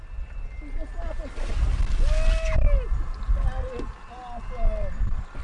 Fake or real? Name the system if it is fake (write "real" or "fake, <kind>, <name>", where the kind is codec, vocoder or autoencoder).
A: real